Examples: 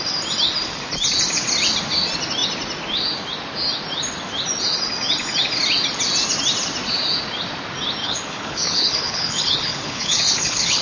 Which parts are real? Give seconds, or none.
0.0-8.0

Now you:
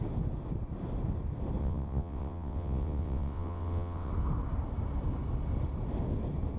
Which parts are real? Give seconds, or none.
0.0-1.6; 4.1-6.6

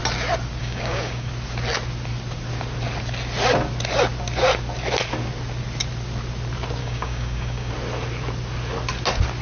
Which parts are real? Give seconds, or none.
0.0-0.6; 1.3-6.8; 7.7-9.4

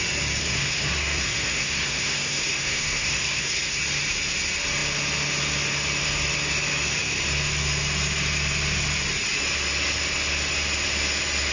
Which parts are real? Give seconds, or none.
0.0-0.4; 3.8-11.5

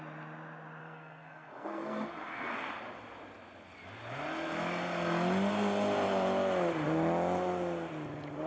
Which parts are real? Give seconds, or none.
0.0-0.8; 2.5-8.5